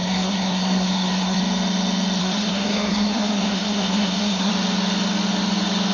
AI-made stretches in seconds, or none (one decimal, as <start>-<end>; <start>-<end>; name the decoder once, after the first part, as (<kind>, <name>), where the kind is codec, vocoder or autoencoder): 0.0-1.4 (codec, SNAC); 2.2-4.5